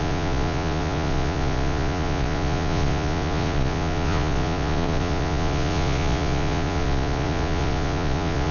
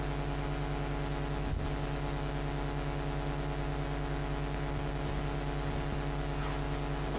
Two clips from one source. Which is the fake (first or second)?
first